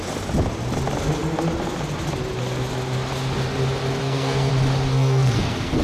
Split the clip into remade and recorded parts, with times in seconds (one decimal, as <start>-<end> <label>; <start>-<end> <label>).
0.0-4.0 recorded; 4.0-4.5 remade; 4.5-4.9 recorded; 4.9-5.8 remade